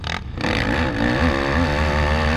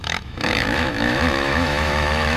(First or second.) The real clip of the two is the first